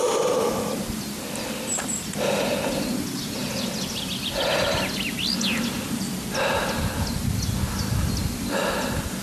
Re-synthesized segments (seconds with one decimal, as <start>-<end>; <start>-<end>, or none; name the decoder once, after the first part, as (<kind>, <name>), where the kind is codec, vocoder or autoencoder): none